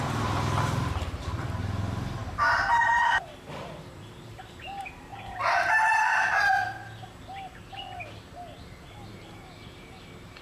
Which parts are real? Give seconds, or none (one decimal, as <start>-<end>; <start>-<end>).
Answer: 2.2-2.8; 5.1-10.4